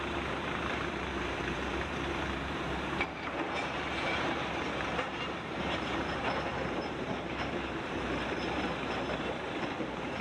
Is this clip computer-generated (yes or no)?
yes